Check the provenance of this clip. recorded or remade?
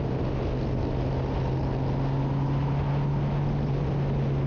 recorded